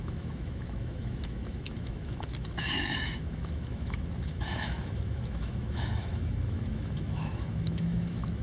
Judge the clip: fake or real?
fake